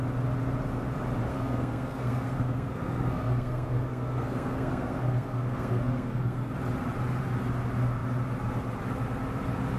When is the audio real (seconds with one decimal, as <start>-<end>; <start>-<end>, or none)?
0.0-1.3; 6.5-9.8